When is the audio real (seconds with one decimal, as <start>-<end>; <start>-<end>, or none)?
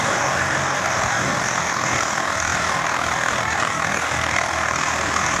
none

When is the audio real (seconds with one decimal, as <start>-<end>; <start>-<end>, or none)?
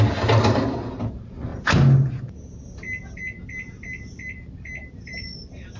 0.0-5.8